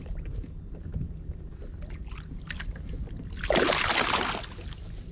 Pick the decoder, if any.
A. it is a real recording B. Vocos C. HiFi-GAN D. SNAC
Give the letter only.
A